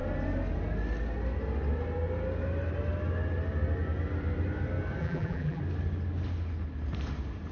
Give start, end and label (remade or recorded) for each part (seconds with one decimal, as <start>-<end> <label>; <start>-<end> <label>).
0.0-5.0 recorded; 5.0-5.6 remade; 5.6-7.5 recorded